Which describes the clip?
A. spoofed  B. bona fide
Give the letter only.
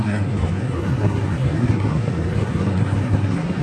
A